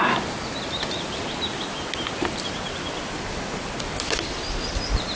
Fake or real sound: real